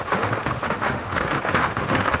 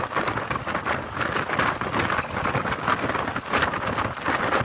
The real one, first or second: second